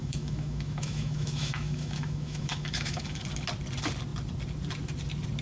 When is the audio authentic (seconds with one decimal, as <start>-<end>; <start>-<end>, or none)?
3.2-5.4